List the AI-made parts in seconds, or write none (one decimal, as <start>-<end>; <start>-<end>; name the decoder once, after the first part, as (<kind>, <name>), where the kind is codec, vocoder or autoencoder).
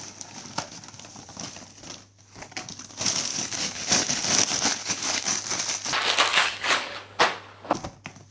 3.3-4.2 (codec, DAC); 4.8-5.4; 6.3-7.2